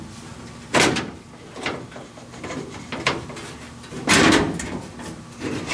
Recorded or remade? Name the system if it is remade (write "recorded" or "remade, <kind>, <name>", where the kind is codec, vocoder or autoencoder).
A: recorded